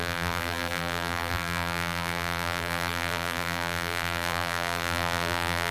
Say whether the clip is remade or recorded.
remade